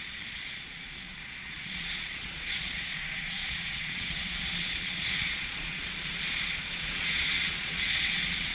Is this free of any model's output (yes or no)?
no